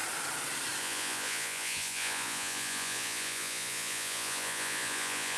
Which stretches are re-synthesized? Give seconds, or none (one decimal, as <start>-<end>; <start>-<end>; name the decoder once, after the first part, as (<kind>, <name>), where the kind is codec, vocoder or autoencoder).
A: 0.8-5.4 (vocoder, Vocos)